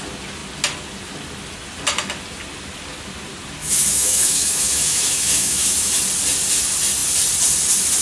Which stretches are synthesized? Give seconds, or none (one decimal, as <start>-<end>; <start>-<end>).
3.6-5.9